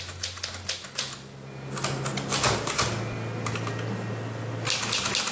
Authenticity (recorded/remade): recorded